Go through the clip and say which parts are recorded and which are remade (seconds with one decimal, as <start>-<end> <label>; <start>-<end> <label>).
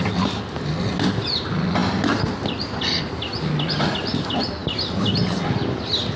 0.0-6.2 recorded